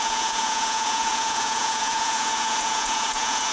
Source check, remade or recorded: remade